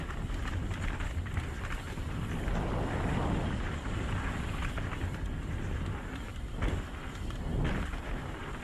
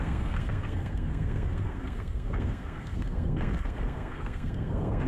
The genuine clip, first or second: first